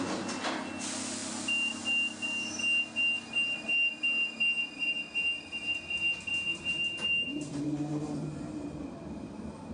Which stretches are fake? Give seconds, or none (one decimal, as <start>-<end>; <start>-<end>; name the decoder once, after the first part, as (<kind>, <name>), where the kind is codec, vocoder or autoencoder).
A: 6.5-9.7 (vocoder, BigVGAN v2)